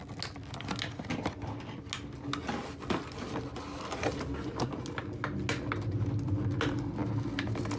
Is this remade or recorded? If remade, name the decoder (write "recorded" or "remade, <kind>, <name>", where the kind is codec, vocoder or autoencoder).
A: recorded